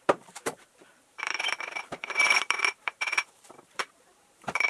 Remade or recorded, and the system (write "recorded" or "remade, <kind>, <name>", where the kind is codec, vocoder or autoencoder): remade, vocoder, BigVGAN v2